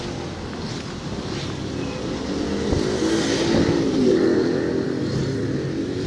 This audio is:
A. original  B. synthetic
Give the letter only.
A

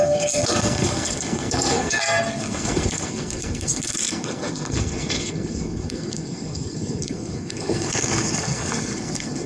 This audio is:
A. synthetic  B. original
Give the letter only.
A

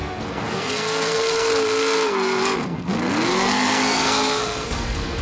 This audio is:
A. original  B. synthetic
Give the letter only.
B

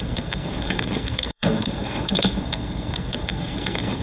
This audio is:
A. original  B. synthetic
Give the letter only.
B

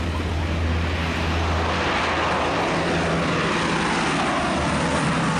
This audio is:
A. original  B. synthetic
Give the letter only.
A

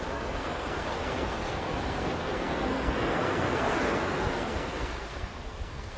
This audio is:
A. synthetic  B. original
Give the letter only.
A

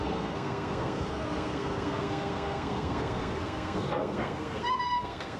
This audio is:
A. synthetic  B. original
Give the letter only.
A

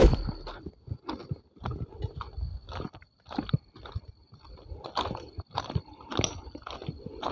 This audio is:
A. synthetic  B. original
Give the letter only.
B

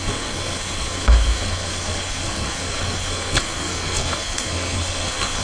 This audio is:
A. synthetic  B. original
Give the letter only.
A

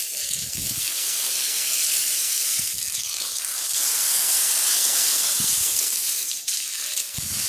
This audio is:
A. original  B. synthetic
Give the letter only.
B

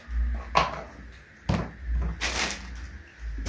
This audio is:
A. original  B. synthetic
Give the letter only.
A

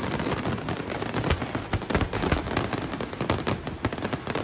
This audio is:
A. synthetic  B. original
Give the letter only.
B